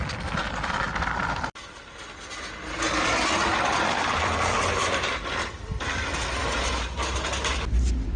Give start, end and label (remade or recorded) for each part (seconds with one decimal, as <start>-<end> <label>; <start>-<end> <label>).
0.0-3.5 recorded; 3.5-5.8 remade; 5.8-8.2 recorded